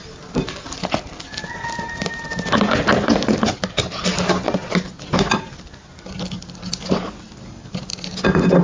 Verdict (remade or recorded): recorded